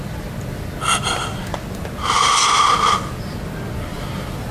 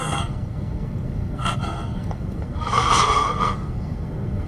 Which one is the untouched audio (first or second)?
first